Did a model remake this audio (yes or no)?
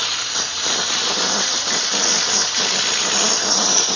no